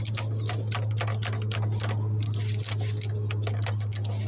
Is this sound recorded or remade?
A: recorded